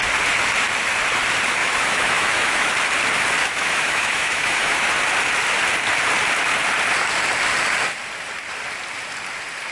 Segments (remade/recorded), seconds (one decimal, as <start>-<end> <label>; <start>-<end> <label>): 0.0-1.6 recorded; 1.6-2.7 remade; 2.7-3.4 recorded; 3.4-4.9 remade; 4.9-9.7 recorded